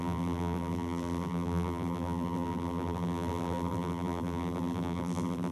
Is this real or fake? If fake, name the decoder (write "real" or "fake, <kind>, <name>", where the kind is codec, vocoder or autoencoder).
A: fake, vocoder, BigVGAN v2